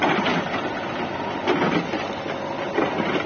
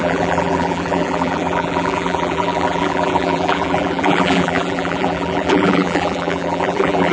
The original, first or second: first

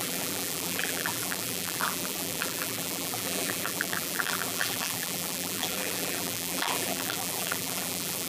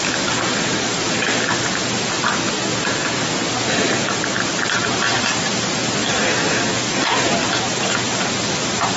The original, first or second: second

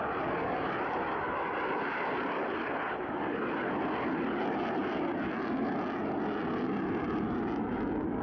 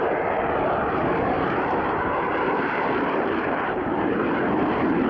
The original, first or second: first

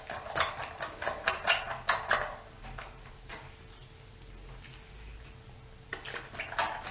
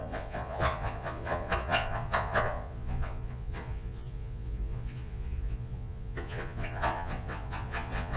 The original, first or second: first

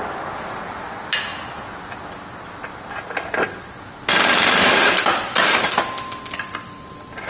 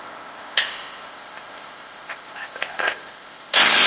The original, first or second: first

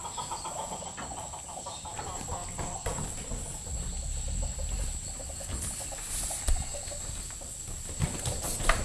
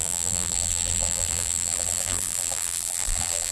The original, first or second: first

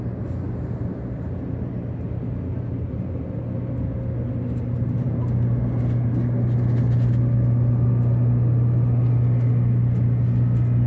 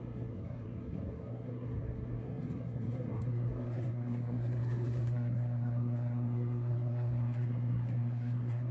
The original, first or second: first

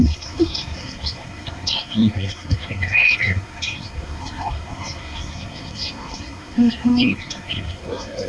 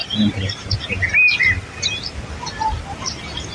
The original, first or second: second